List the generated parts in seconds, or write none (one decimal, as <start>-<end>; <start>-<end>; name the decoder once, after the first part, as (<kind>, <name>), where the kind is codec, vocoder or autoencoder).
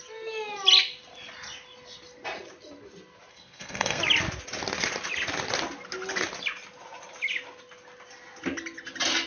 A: 3.3-4.0 (codec, SNAC)